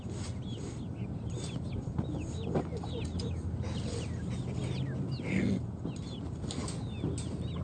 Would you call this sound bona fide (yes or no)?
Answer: yes